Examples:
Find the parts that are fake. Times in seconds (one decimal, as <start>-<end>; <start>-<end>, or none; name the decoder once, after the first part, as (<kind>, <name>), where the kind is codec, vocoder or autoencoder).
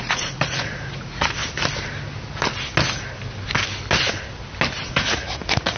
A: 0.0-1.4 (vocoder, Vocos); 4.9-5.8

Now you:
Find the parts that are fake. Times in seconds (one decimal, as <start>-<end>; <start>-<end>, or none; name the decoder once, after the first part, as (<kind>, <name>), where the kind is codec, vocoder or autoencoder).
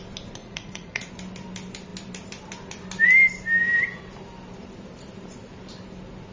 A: 0.4-1.1 (vocoder, Vocos)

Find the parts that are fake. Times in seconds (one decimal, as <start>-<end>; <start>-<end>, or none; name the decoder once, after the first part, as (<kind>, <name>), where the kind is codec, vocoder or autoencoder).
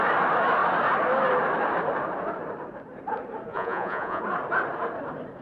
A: 3.5-4.2 (vocoder, Vocos)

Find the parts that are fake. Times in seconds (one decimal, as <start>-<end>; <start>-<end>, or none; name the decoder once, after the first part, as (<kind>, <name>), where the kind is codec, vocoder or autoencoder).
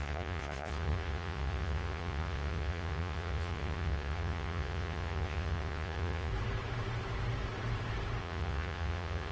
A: 0.0-6.3 (vocoder, Vocos); 8.2-9.3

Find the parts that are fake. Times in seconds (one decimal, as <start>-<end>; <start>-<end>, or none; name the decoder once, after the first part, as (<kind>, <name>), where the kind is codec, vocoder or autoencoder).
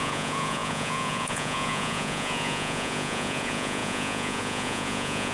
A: 0.0-5.3 (vocoder, Vocos)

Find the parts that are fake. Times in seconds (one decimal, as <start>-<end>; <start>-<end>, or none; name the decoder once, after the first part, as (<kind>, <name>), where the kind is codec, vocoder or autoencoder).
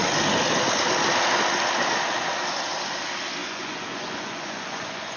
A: 3.4-5.2 (vocoder, Vocos)